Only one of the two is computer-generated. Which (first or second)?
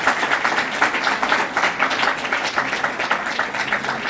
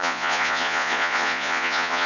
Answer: second